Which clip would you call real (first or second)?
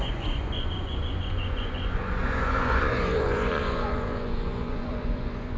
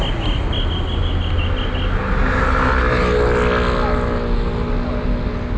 second